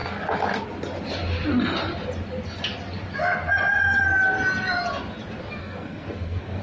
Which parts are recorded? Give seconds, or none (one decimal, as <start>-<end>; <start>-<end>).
0.0-5.6

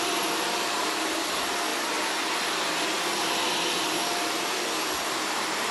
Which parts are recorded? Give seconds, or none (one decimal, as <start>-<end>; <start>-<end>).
1.7-5.1

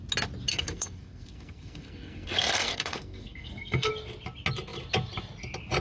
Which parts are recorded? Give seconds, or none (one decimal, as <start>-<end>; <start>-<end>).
0.0-0.5; 3.9-5.8